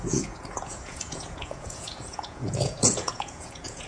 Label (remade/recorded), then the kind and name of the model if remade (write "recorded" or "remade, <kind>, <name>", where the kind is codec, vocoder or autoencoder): remade, vocoder, Vocos